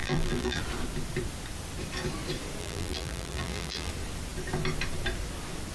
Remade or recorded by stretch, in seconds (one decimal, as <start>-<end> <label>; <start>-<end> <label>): 0.0-0.6 remade; 0.6-2.6 recorded; 2.6-3.9 remade; 3.9-5.7 recorded